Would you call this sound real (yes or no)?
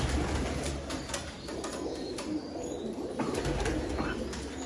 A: yes